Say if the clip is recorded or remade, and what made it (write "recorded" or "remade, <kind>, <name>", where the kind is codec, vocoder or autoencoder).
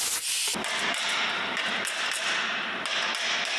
recorded